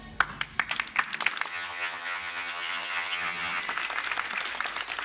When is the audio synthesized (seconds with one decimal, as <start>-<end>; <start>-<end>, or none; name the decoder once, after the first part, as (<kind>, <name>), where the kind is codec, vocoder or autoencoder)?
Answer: 1.5-3.6 (vocoder, HiFi-GAN)